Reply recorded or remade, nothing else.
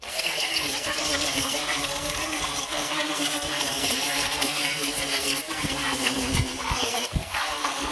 remade